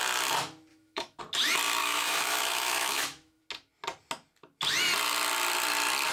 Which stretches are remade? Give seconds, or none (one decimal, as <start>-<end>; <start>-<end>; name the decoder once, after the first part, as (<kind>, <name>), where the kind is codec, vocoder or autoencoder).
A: 0.7-1.2 (autoencoder, DAC-VAE); 1.8-3.4